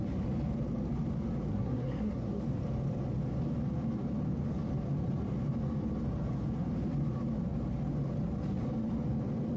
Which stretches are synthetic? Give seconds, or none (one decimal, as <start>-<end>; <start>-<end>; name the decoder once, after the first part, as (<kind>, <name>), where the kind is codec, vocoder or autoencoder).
1.5-2.4 (codec, SNAC)

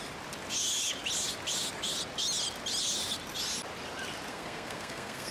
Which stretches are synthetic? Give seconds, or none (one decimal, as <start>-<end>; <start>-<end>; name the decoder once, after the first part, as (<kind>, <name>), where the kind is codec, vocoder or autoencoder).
4.3-5.3 (codec, SNAC)

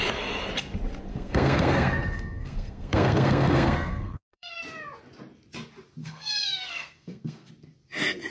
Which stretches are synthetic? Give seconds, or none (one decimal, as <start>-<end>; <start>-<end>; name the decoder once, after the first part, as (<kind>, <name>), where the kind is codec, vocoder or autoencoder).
1.1-4.6 (codec, SNAC); 6.0-7.5

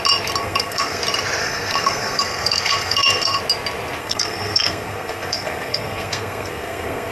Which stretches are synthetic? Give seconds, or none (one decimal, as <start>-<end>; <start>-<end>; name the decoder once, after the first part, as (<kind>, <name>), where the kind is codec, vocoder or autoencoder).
0.4-1.0 (codec, SNAC); 1.4-3.4; 4.0-7.1

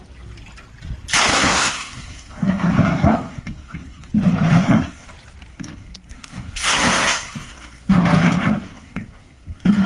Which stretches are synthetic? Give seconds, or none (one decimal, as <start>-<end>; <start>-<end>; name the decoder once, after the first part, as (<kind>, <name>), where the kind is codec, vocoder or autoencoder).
1.3-4.1 (codec, SNAC); 4.6-5.1; 5.5-9.9

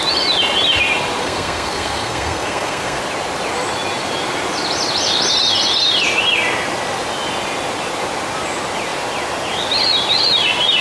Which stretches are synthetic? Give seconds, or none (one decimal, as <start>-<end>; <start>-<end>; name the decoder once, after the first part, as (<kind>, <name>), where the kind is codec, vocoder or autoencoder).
1.2-3.0 (codec, SNAC)